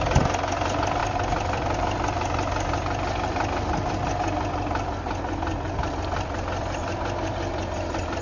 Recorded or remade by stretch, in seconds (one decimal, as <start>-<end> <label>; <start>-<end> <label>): 0.0-8.2 recorded